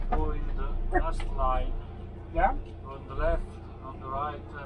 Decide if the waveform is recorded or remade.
recorded